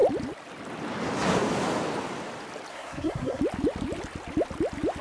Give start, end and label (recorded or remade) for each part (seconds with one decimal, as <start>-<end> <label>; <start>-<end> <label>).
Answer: 0.0-2.7 recorded; 2.7-3.4 remade; 3.4-5.0 recorded